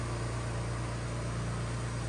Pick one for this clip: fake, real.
real